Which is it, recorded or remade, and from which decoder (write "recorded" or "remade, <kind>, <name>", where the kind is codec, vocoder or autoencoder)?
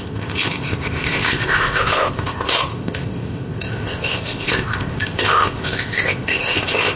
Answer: remade, codec, ZipCodec